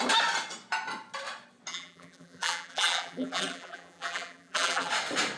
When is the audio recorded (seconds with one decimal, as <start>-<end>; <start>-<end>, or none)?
0.0-1.7; 4.9-5.4